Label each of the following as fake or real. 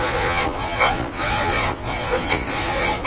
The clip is fake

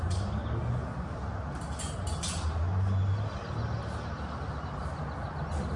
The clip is real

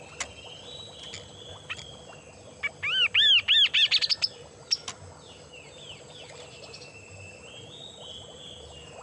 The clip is real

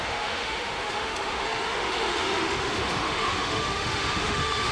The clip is fake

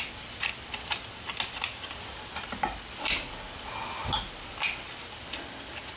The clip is real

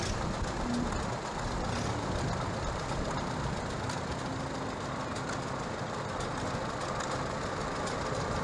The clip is real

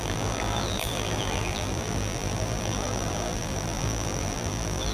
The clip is fake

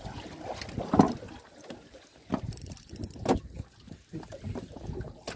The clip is real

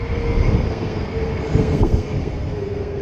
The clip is fake